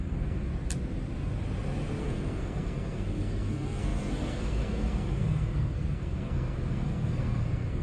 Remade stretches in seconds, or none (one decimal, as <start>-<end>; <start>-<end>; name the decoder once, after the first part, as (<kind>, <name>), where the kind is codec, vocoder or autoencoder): 0.0-0.5 (codec, SNAC); 2.0-7.8